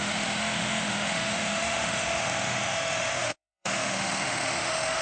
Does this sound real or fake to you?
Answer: fake